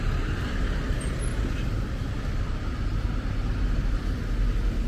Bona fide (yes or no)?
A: yes